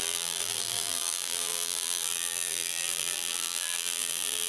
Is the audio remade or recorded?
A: remade